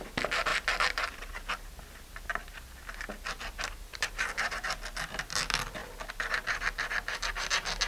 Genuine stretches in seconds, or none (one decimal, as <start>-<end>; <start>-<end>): 0.0-7.9

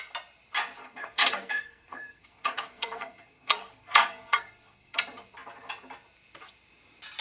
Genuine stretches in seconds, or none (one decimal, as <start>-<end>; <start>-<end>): 0.0-0.8; 5.0-7.2